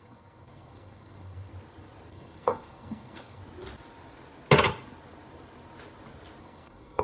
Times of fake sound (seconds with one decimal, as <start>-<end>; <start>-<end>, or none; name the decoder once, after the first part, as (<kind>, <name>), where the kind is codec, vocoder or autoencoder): 0.0-1.5 (codec, SNAC); 2.1-3.4; 6.4-7.0

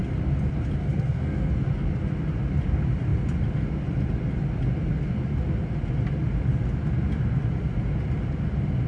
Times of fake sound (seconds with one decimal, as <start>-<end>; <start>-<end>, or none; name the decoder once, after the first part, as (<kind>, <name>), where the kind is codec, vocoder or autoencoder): 0.8-1.5 (codec, SNAC)